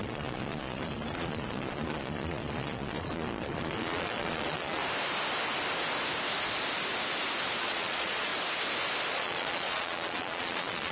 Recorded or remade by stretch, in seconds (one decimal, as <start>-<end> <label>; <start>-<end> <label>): 0.0-4.8 remade; 4.8-7.6 recorded; 7.6-8.3 remade; 8.3-9.1 recorded; 9.1-10.9 remade